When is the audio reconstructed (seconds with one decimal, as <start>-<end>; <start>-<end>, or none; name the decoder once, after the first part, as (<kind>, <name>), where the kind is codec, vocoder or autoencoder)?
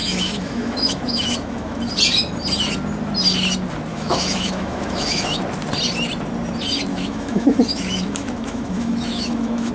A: 0.0-1.8 (autoencoder, DAC-VAE); 3.9-5.4; 6.9-9.7